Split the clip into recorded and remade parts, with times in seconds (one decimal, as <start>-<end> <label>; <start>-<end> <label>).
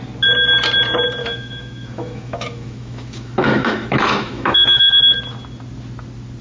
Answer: 0.0-1.2 recorded; 1.2-5.0 remade; 5.0-6.4 recorded